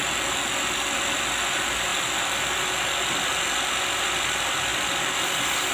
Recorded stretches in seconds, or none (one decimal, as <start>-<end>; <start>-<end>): 0.0-5.7